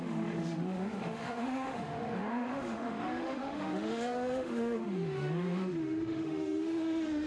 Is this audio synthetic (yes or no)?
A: yes